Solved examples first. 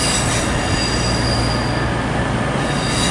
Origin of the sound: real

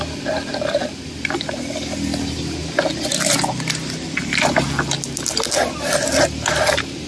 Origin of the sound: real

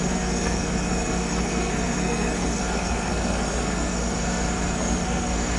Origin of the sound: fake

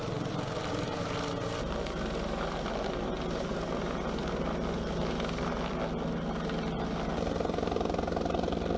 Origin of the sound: real